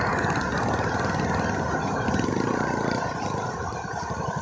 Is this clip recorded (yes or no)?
yes